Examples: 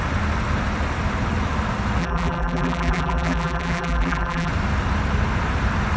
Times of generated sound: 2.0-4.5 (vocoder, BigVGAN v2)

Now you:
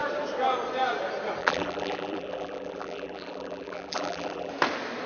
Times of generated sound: 1.4-4.5 (vocoder, BigVGAN v2)

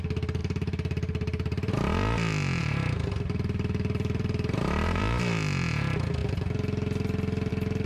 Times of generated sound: 0.4-1.7 (vocoder, BigVGAN v2); 2.6-5.0

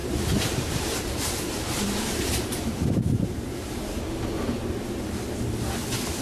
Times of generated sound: 0.0-3.7 (vocoder, BigVGAN v2)

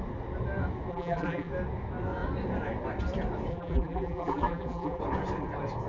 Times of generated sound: 0.9-1.5 (vocoder, BigVGAN v2); 3.5-5.0

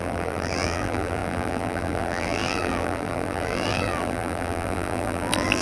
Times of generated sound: 0.0-5.6 (vocoder, BigVGAN v2)

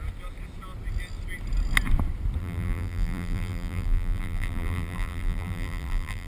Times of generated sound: 2.4-6.3 (vocoder, BigVGAN v2)